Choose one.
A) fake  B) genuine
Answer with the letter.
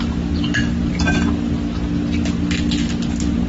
B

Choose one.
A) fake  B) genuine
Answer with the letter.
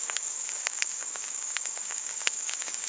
A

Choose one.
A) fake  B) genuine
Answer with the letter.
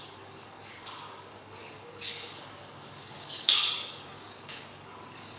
A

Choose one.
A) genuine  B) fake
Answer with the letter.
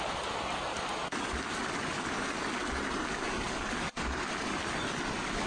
A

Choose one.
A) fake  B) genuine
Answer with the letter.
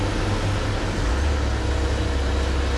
B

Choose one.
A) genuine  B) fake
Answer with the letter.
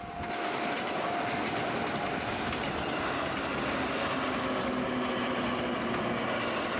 A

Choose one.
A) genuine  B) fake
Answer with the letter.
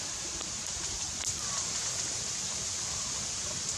A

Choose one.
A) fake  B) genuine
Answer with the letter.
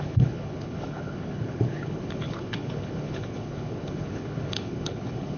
A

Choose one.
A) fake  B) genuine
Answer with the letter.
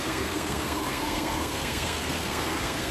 A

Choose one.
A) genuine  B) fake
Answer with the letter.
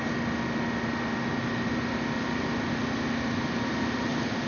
A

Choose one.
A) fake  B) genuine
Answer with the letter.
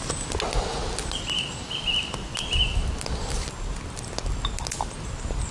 B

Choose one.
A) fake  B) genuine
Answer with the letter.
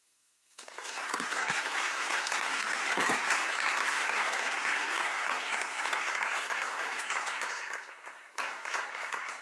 A